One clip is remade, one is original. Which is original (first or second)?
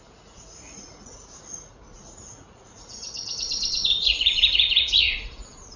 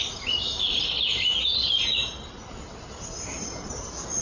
second